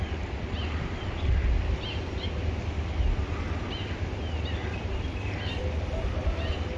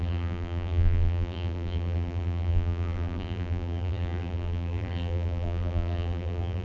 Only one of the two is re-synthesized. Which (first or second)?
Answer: second